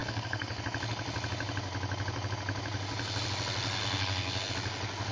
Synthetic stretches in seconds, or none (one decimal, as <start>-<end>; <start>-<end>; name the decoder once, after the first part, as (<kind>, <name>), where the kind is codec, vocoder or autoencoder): 0.0-0.6 (codec, SNAC); 3.8-4.5